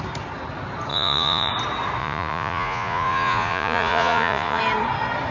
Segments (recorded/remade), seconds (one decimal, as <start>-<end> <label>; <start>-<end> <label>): 0.0-0.9 recorded; 0.9-1.5 remade; 1.5-2.0 recorded; 2.0-4.6 remade; 4.6-5.3 recorded